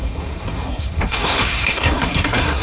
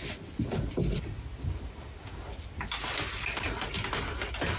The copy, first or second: first